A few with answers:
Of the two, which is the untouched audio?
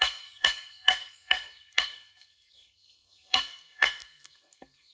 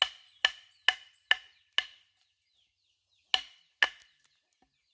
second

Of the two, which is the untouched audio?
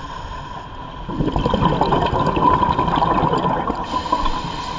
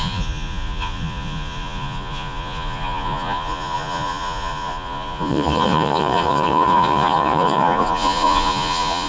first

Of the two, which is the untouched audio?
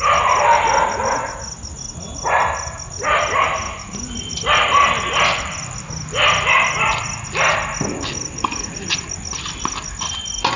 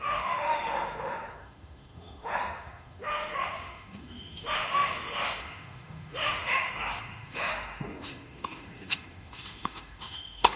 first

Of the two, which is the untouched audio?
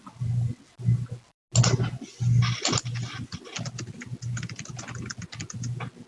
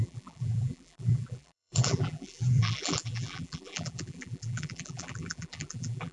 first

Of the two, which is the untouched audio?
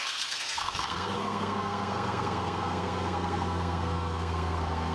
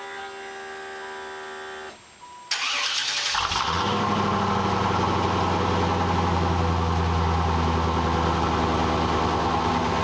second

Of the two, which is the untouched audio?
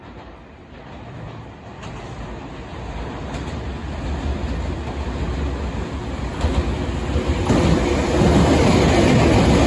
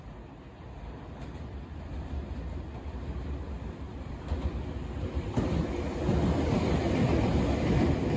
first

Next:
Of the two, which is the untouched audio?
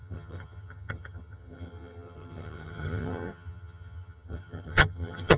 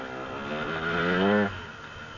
second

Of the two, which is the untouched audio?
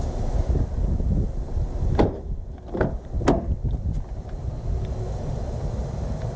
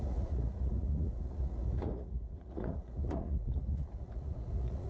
first